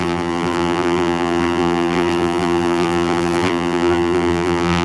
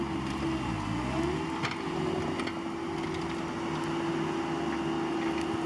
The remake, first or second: first